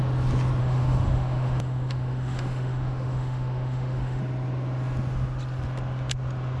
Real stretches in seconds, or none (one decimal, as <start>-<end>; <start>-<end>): 0.0-0.6; 4.2-6.6